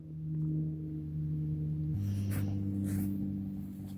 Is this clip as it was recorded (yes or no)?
yes